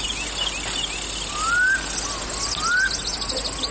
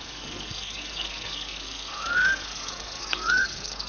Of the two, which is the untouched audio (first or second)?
first